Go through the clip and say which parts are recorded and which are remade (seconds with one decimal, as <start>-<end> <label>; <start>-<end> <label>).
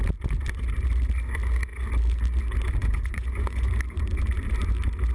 0.0-2.8 recorded; 2.8-3.7 remade; 3.7-5.1 recorded